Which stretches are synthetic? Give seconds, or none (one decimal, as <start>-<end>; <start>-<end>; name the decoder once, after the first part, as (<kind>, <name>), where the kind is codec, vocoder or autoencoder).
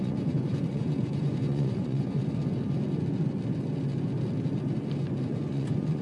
0.0-2.2 (vocoder, Vocos); 5.2-6.0